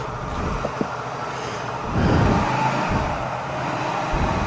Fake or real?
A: real